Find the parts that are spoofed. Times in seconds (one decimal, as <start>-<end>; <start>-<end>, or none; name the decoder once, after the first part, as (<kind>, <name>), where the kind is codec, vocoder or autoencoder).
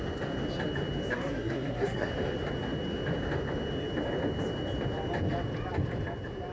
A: 1.1-2.1 (codec, SNAC)